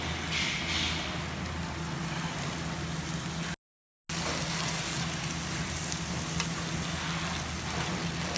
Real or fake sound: real